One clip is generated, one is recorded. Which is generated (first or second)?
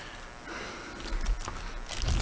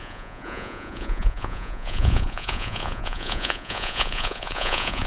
second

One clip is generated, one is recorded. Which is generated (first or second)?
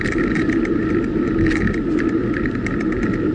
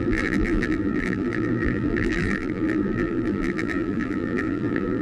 second